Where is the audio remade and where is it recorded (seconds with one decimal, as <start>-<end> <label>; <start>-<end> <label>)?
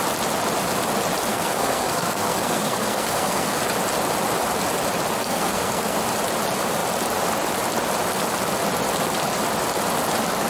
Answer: 0.0-1.3 recorded; 1.3-3.6 remade; 3.6-5.2 recorded; 5.2-6.0 remade; 6.0-10.5 recorded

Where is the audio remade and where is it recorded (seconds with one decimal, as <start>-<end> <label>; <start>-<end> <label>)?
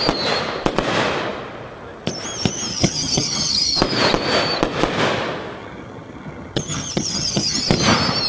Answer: 0.0-2.7 recorded; 2.7-3.8 remade; 3.8-5.6 recorded; 5.6-7.6 remade; 7.6-8.3 recorded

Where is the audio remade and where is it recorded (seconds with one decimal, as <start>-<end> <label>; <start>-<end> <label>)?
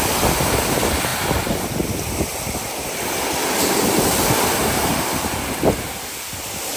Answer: 0.0-1.1 recorded; 1.1-5.2 remade; 5.2-6.8 recorded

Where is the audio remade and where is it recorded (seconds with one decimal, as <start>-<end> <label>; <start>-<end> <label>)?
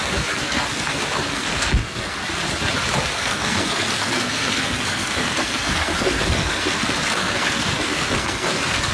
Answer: 0.0-2.2 remade; 2.2-3.1 recorded; 3.1-8.9 remade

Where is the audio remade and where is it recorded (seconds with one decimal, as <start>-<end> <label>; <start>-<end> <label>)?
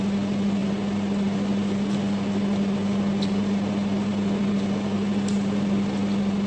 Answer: 0.0-6.5 recorded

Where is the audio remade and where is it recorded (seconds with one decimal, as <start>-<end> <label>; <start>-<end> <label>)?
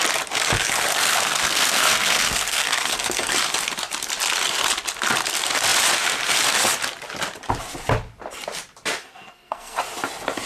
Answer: 0.0-0.9 recorded; 0.9-3.5 remade; 3.5-9.0 recorded; 9.0-9.8 remade; 9.8-10.5 recorded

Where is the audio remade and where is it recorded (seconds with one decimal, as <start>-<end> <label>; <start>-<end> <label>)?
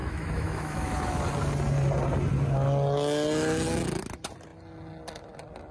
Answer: 0.0-1.2 remade; 1.2-5.7 recorded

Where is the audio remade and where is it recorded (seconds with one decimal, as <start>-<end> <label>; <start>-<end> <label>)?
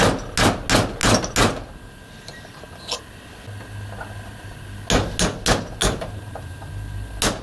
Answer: 0.0-5.8 recorded; 5.8-6.7 remade; 6.7-7.4 recorded